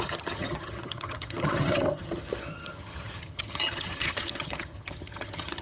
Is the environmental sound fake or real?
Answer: fake